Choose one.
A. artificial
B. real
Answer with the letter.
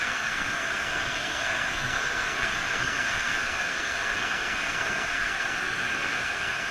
A